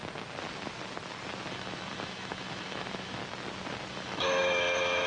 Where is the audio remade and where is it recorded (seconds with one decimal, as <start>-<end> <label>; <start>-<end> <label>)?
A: 0.0-1.5 recorded; 1.5-3.2 remade; 3.2-3.9 recorded; 3.9-5.1 remade